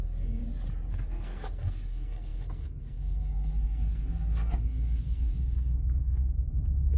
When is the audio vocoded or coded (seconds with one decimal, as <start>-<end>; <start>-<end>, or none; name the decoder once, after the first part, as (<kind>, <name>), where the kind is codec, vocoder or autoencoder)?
0.0-0.4 (codec, SNAC); 0.9-7.0